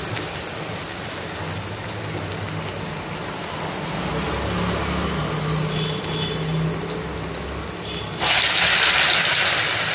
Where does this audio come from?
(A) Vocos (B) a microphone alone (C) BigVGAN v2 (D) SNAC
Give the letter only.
B